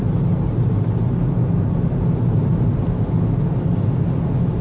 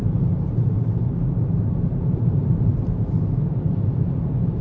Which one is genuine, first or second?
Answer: first